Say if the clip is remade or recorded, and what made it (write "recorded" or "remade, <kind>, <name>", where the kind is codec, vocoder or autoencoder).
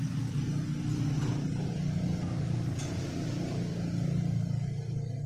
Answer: recorded